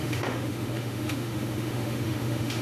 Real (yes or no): no